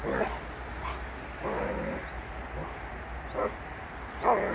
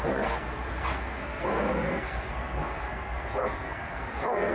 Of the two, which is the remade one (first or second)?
second